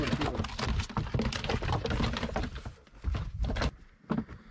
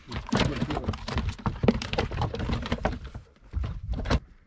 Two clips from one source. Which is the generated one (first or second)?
second